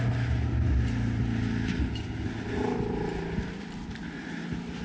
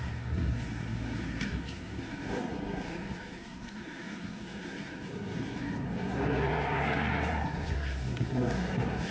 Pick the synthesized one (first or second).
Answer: second